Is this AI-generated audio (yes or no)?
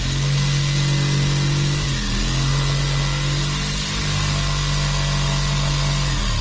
no